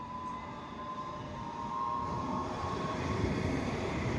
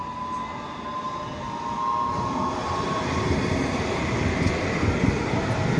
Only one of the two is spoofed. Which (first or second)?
first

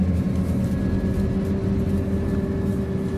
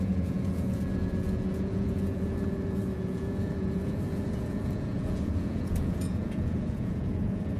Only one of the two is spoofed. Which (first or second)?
second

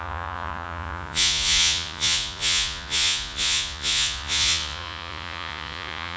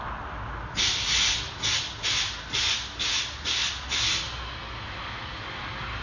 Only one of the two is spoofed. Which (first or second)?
first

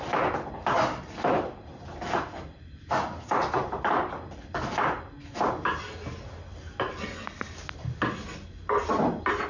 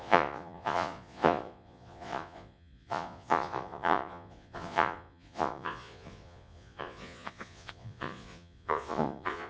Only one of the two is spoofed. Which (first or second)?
second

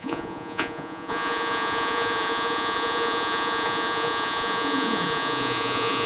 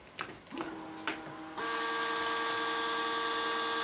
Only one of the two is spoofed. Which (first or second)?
first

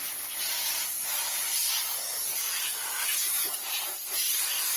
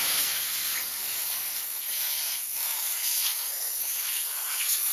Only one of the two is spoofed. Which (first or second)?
second